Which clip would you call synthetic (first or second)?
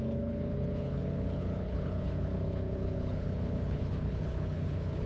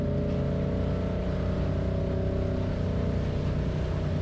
first